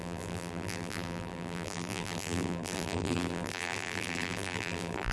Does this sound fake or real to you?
fake